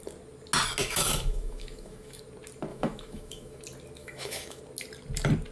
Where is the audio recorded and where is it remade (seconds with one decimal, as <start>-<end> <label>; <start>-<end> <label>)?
0.0-0.8 recorded; 0.8-2.2 remade; 2.2-2.7 recorded; 2.7-3.6 remade; 3.6-4.0 recorded; 4.0-4.6 remade; 4.6-5.5 recorded

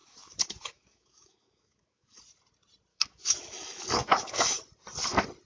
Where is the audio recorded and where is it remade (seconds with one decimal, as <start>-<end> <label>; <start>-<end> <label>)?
0.0-2.2 remade; 2.2-2.9 recorded; 2.9-4.6 remade; 4.6-5.5 recorded

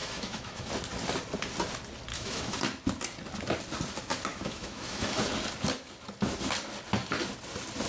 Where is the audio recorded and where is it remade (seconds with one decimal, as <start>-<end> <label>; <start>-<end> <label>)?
0.0-0.7 remade; 0.7-2.1 recorded; 2.1-2.6 remade; 2.6-4.3 recorded; 4.3-5.3 remade; 5.3-7.9 recorded

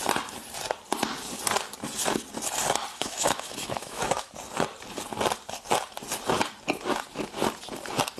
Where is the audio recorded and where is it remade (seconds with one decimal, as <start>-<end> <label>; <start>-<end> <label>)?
0.0-2.9 recorded; 2.9-4.3 remade; 4.3-8.2 recorded

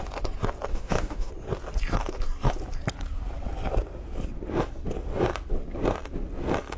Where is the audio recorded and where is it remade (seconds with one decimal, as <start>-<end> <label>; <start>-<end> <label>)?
0.0-0.7 recorded; 0.7-1.3 remade; 1.3-6.8 recorded

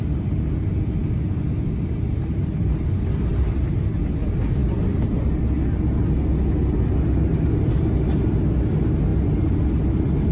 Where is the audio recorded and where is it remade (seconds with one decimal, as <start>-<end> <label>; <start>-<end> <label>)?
0.0-10.3 recorded